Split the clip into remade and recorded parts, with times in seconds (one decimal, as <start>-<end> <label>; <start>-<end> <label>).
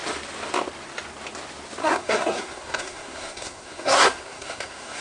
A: 0.0-1.8 recorded; 1.8-5.0 remade